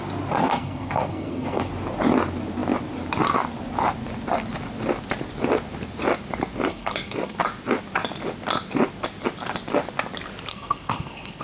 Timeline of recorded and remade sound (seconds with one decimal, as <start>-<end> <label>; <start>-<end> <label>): 0.0-0.4 recorded; 0.4-1.7 remade; 1.7-6.7 recorded; 6.7-7.4 remade; 7.4-10.5 recorded; 10.5-11.4 remade